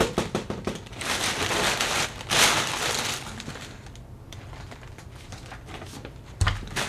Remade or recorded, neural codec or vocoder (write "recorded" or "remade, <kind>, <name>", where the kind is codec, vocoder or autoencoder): recorded